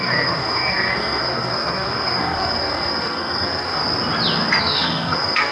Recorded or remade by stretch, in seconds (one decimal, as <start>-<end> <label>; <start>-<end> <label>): 0.0-3.8 remade; 3.8-4.6 recorded; 4.6-5.5 remade